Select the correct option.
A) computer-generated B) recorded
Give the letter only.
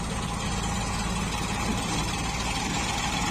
B